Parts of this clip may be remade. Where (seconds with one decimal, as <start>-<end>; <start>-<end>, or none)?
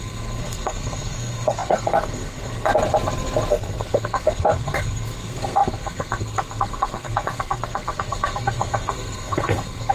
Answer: 0.0-2.7; 3.5-9.9